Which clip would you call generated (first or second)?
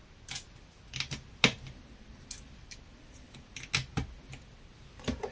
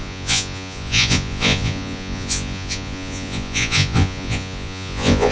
second